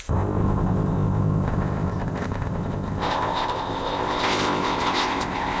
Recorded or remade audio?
remade